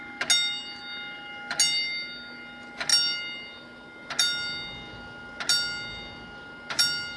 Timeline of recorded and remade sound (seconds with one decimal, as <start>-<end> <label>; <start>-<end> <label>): 0.0-7.2 recorded